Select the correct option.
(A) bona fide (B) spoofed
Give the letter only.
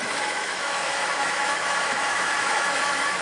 B